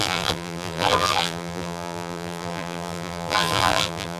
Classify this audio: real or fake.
fake